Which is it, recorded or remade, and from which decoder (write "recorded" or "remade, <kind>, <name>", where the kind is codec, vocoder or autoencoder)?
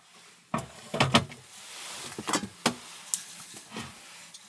recorded